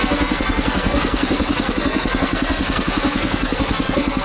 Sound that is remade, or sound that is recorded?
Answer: remade